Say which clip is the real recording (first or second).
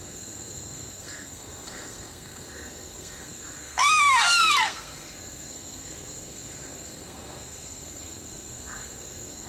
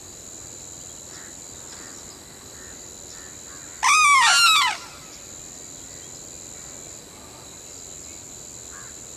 second